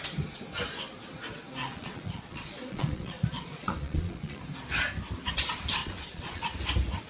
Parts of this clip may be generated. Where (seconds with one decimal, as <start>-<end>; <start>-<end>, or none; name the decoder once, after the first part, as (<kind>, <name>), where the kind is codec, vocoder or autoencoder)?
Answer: 1.6-4.4 (vocoder, Vocos); 5.8-6.4